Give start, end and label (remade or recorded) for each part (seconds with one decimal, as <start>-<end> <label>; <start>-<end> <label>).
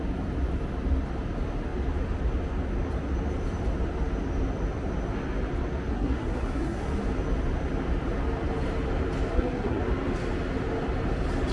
0.0-5.9 recorded; 5.9-6.8 remade; 6.8-9.3 recorded; 9.3-9.8 remade; 9.8-11.5 recorded